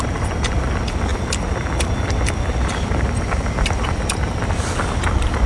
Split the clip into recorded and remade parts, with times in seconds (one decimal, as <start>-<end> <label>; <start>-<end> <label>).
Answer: 0.0-5.5 recorded